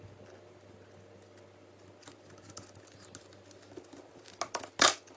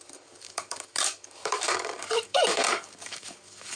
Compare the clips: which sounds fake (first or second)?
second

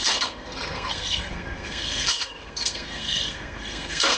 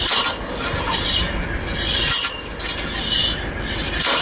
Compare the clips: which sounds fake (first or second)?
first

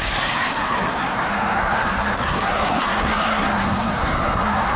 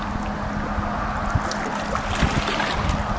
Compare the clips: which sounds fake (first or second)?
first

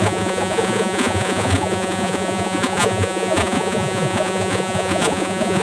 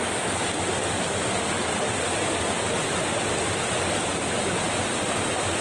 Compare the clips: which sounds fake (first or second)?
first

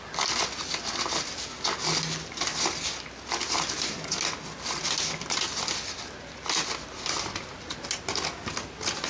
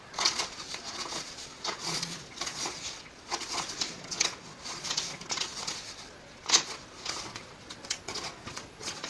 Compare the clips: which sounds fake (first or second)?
second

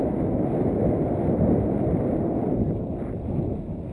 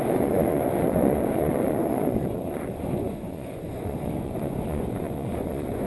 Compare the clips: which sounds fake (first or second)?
second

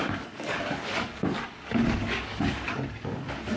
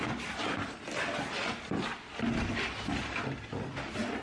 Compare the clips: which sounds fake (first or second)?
first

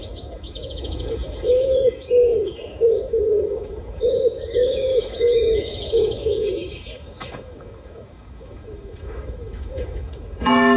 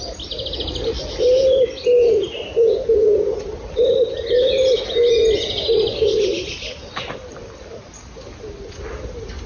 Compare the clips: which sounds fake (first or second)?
first